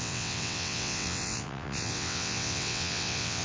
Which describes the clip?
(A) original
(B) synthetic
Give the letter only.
B